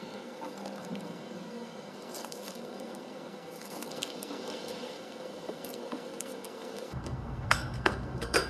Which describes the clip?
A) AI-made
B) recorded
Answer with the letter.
A